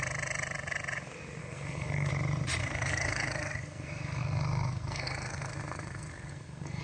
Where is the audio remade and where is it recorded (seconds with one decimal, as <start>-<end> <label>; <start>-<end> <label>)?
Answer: 0.0-1.4 recorded; 1.4-2.1 remade; 2.1-2.6 recorded; 2.6-6.8 remade